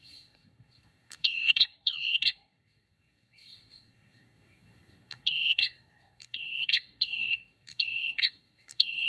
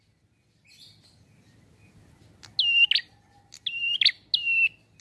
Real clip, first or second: second